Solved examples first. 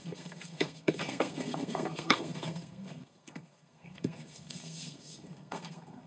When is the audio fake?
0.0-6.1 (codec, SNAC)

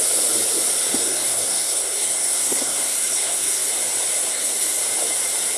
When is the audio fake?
1.0-3.7 (codec, SNAC); 4.3-4.8